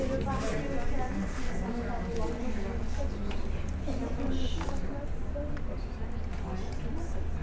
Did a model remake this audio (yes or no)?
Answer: no